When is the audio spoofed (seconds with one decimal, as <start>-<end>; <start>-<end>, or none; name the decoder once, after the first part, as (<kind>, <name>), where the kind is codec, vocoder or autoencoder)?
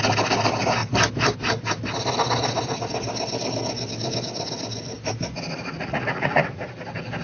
5.7-6.7 (vocoder, Vocos)